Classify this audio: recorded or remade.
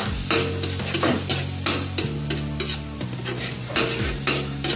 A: recorded